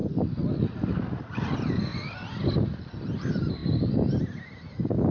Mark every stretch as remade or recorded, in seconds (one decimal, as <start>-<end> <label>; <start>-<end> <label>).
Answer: 0.0-5.1 recorded